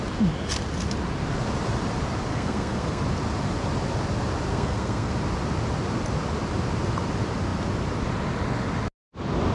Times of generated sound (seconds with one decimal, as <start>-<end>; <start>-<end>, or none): 2.3-3.0; 4.5-5.1

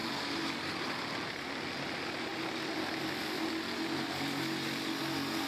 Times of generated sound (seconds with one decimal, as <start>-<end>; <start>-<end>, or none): none

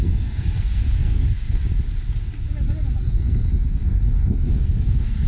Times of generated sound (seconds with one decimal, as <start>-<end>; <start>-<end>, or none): 0.0-1.6; 3.0-5.3

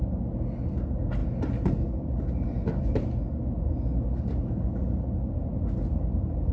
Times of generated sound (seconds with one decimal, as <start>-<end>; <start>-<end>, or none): none

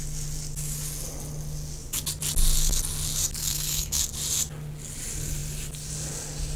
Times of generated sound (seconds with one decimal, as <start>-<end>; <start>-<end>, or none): 3.4-4.0

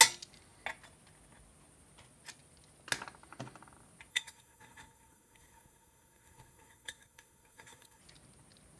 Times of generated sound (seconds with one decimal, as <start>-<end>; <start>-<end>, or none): 4.1-8.0

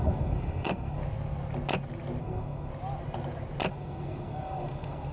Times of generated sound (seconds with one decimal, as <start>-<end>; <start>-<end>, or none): 0.0-1.0; 2.2-2.7; 3.7-5.1